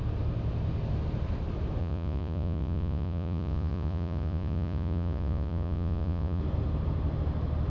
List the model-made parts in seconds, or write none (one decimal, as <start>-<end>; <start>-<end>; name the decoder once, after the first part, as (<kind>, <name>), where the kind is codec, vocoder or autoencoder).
1.8-6.4 (vocoder, Vocos)